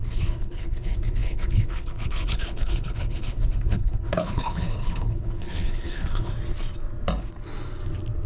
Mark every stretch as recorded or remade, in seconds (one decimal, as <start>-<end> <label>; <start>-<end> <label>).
0.0-6.3 remade; 6.3-8.3 recorded